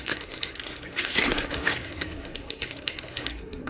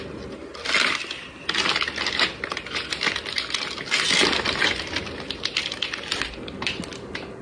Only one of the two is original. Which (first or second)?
second